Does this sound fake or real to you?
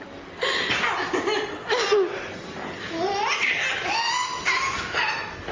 real